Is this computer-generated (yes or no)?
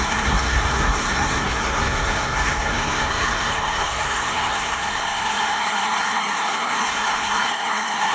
yes